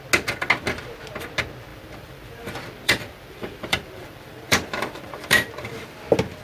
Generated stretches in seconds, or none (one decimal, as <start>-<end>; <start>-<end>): 1.7-5.5